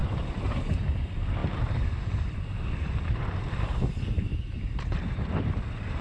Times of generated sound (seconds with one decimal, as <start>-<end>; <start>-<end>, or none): 0.0-6.0